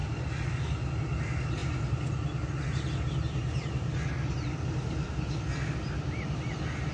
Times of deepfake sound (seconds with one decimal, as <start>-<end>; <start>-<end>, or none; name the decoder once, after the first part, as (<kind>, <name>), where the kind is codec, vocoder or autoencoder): none